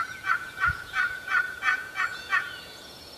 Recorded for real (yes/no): no